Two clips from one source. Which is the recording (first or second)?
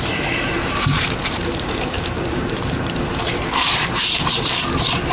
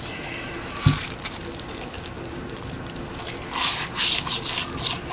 second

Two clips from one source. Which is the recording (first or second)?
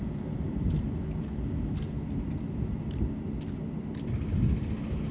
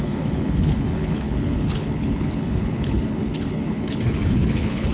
first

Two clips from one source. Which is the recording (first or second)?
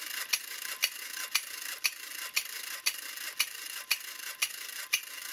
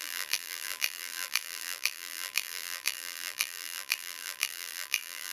first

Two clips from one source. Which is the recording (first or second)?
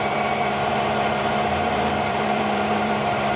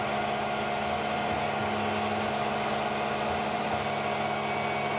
second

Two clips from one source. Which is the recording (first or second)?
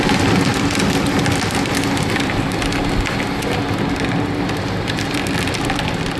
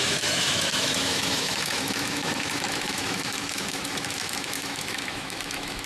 first